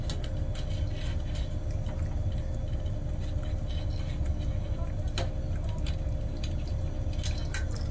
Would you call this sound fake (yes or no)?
no